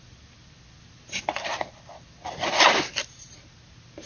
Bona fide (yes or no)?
yes